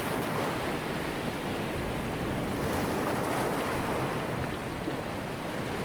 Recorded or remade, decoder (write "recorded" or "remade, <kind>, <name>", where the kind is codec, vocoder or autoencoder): recorded